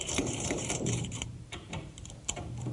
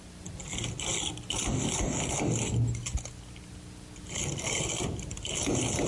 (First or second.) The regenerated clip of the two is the first